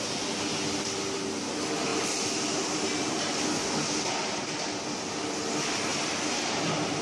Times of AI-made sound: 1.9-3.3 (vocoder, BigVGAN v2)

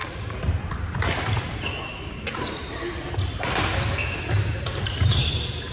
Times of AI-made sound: 0.0-1.7 (vocoder, BigVGAN v2)

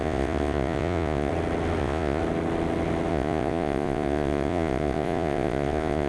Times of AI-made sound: 0.0-1.3 (vocoder, Vocos); 1.8-2.2; 3.1-6.1

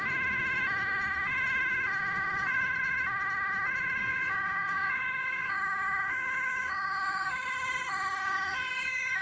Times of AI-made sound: 4.0-7.5 (codec, DAC); 8.2-9.2

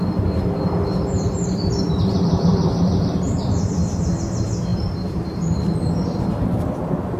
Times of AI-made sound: 0.9-3.6 (vocoder, BigVGAN v2); 4.7-5.4